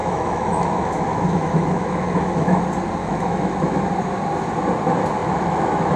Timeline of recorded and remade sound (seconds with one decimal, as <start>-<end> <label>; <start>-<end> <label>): 0.0-2.6 remade; 2.6-3.0 recorded; 3.0-3.8 remade; 3.8-5.2 recorded; 5.2-6.0 remade